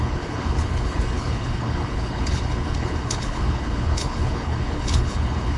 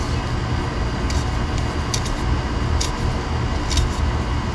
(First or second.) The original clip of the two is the second